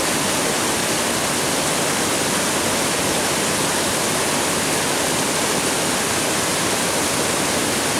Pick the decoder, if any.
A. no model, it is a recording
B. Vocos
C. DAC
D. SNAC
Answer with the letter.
A